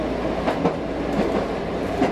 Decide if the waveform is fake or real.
real